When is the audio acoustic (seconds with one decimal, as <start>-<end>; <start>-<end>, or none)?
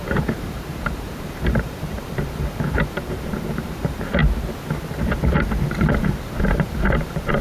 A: 4.2-5.9